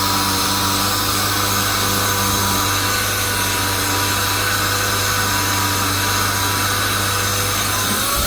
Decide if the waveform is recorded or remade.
recorded